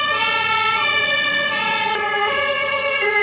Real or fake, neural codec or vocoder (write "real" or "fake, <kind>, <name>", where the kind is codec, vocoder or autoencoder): fake, vocoder, Vocos